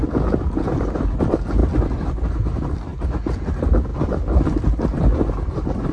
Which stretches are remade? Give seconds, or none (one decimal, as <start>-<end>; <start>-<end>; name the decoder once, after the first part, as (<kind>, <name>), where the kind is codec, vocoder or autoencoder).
none